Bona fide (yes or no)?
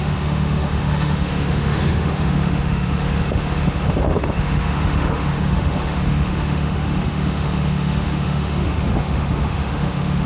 no